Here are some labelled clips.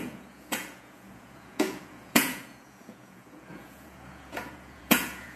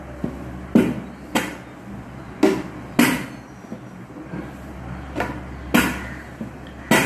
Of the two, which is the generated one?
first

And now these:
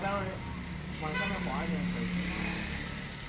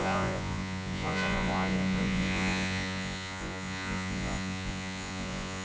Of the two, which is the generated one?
second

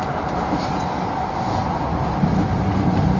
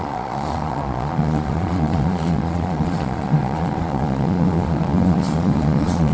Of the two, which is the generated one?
second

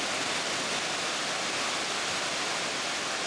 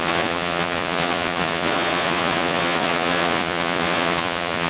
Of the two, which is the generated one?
second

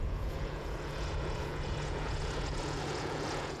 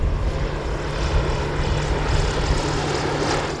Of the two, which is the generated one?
first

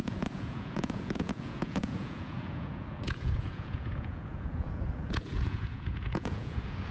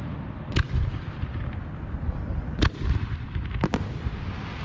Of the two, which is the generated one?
first